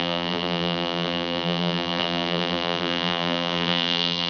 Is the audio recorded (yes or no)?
no